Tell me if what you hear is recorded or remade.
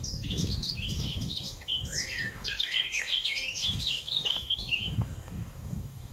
remade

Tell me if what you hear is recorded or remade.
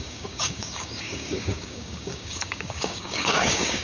remade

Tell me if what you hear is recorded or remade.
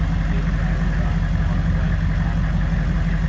recorded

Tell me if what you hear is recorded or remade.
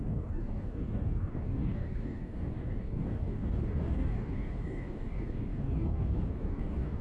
remade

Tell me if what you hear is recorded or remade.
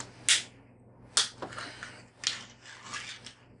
recorded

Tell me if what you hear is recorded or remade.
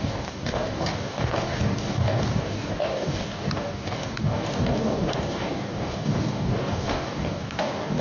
remade